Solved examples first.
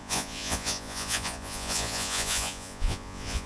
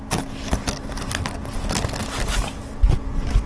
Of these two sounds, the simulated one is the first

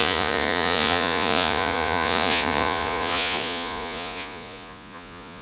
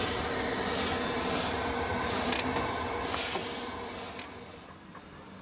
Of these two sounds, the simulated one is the first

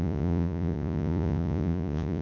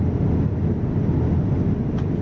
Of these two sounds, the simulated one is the first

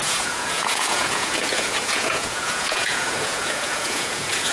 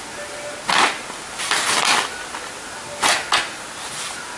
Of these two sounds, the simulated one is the first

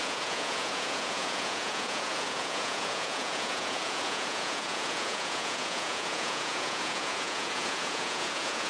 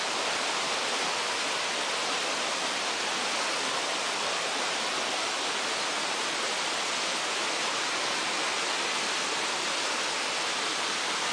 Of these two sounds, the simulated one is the first